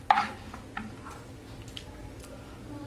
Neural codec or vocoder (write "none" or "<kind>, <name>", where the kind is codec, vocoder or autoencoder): none